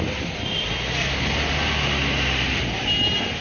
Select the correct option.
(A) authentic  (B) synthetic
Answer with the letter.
A